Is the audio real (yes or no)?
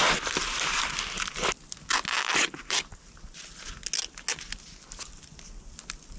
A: yes